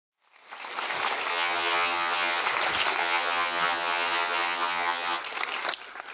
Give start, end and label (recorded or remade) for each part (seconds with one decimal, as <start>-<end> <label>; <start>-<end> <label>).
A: 0.0-1.3 recorded; 1.3-2.4 remade; 2.4-3.0 recorded; 3.0-5.2 remade; 5.2-6.1 recorded